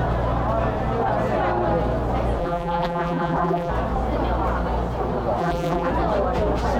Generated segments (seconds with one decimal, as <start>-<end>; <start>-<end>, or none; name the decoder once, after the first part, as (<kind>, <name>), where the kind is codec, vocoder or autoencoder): 2.4-3.7 (vocoder, BigVGAN v2); 5.4-5.9